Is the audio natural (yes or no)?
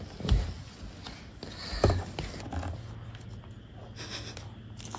yes